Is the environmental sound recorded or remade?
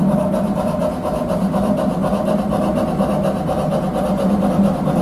recorded